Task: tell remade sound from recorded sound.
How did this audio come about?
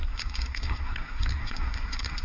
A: remade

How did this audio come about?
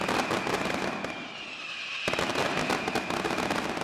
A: recorded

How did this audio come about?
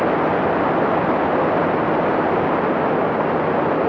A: recorded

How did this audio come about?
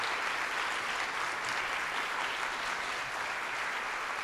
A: recorded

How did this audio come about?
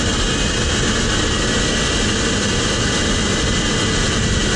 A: recorded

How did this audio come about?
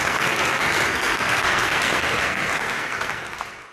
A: remade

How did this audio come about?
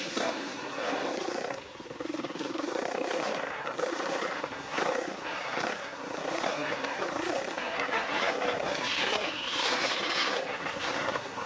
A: remade